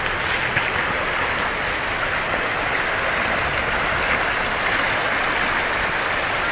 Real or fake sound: real